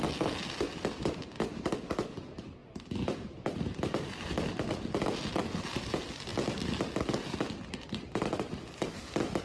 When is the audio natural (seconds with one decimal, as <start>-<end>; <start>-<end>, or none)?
0.0-2.6; 4.7-9.4